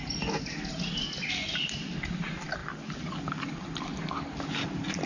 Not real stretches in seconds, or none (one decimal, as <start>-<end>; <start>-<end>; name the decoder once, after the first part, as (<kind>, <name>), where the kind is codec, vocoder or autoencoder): none